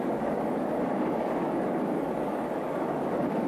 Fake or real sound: fake